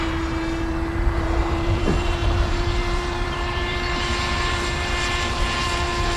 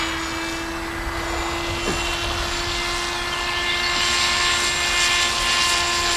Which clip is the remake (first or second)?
first